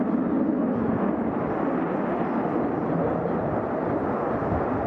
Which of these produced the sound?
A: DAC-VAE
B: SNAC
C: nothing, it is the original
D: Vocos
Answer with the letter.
C